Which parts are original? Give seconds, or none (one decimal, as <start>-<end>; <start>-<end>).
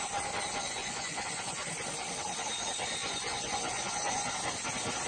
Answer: 0.0-0.6; 1.7-3.0; 4.3-5.1